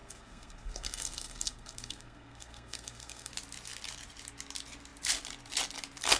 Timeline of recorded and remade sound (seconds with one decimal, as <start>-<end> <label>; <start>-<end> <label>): 0.0-3.3 remade; 3.3-6.2 recorded